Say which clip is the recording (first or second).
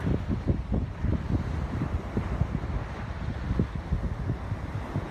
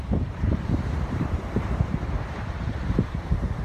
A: first